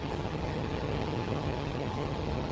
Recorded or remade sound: remade